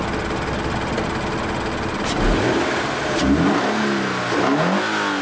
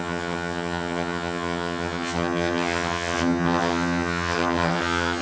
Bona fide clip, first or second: first